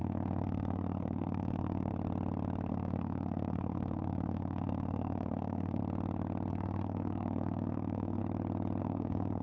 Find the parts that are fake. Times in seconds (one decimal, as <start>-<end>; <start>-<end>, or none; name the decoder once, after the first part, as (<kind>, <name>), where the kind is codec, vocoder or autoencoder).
0.0-1.9 (codec, SNAC); 2.7-5.8; 6.5-8.2; 8.8-9.4